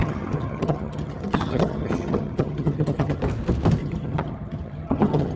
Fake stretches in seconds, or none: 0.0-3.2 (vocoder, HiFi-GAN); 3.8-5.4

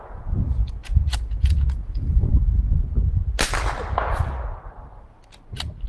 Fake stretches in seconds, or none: 0.0-2.3 (vocoder, Vocos)

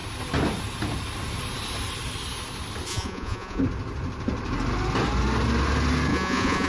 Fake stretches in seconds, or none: 2.9-3.6 (vocoder, Vocos); 6.1-6.7

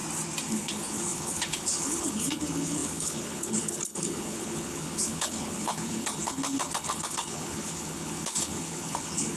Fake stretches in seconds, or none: 0.5-9.4 (codec, HILCodec)

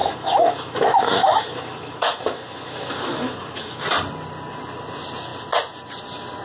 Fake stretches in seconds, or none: 0.0-3.8 (autoencoder, DAC-VAE)

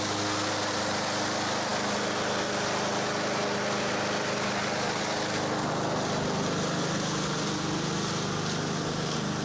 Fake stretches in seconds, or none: none

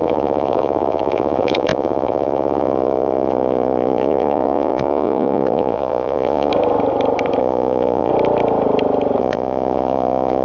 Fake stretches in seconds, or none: 0.0-6.5 (vocoder, Vocos); 7.4-8.1; 9.2-10.4